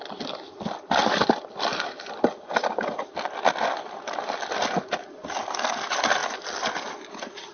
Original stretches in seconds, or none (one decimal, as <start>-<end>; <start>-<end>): 0.0-7.5